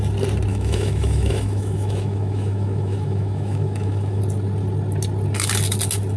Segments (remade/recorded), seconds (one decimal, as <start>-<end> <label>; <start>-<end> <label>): 0.0-0.5 recorded; 0.5-4.2 remade; 4.2-6.2 recorded